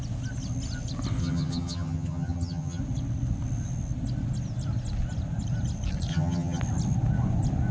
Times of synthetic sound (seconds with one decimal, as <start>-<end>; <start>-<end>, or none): 1.2-2.8; 6.1-6.6